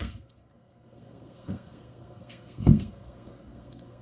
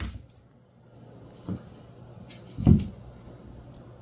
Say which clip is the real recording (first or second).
second